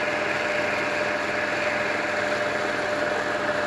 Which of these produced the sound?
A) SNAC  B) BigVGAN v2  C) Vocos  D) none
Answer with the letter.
D